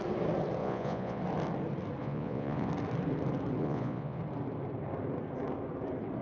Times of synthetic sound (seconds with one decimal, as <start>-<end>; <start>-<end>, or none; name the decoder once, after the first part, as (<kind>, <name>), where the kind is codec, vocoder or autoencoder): 0.6-1.2 (vocoder, Vocos); 2.0-2.7; 3.6-4.2